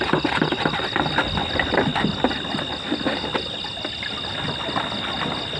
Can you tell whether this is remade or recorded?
recorded